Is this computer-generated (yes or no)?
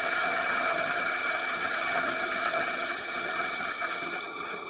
yes